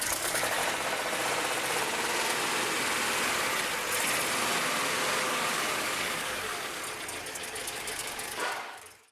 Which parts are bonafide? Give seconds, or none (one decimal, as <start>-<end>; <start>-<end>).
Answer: 0.6-5.2; 6.8-7.3